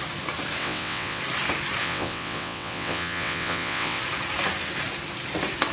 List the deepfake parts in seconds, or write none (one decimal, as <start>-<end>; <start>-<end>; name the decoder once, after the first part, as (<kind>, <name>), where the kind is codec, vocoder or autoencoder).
0.6-1.2 (vocoder, WaveNeXt); 1.8-4.0